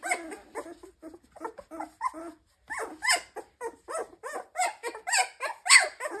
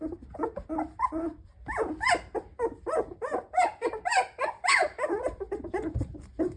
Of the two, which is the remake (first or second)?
second